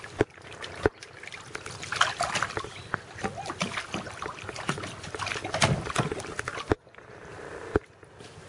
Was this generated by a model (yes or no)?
no